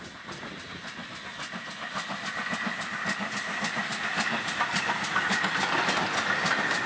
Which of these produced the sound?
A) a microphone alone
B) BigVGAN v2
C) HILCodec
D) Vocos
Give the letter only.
A